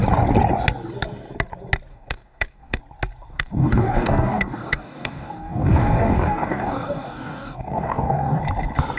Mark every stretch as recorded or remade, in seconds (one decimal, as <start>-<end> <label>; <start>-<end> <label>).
0.0-1.9 recorded; 1.9-2.8 remade; 2.8-3.3 recorded; 3.3-8.4 remade; 8.4-9.0 recorded